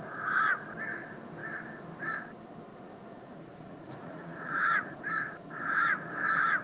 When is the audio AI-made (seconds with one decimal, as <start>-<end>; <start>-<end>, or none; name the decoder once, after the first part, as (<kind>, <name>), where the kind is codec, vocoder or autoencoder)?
2.7-5.0 (vocoder, Vocos)